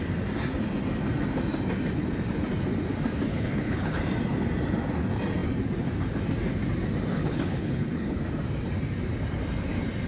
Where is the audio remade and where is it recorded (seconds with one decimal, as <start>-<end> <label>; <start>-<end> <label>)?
0.0-3.3 recorded; 3.3-4.0 remade; 4.0-7.1 recorded; 7.1-8.2 remade; 8.2-10.1 recorded